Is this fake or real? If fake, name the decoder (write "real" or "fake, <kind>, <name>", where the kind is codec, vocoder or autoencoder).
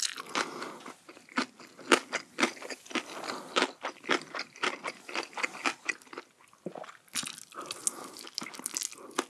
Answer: real